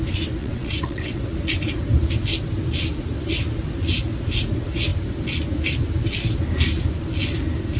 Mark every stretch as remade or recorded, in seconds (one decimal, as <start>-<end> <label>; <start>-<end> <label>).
0.0-0.4 recorded; 0.4-1.2 remade; 1.2-7.8 recorded